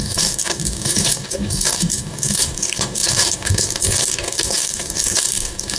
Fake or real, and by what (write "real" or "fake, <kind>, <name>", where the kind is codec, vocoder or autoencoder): fake, codec, DAC